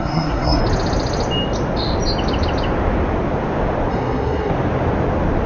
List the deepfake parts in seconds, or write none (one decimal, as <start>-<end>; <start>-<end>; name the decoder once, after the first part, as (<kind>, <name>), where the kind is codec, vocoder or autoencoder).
0.0-0.6 (codec, SNAC); 3.9-4.5